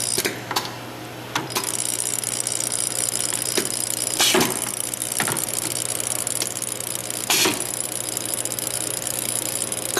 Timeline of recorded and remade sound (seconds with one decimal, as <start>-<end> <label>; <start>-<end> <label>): 0.0-10.0 recorded